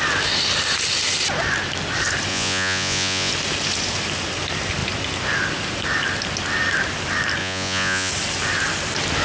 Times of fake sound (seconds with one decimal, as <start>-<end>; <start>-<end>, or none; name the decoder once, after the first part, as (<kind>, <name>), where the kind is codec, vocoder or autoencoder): 2.3-3.3 (vocoder, Vocos); 7.4-8.1